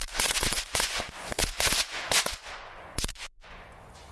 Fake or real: fake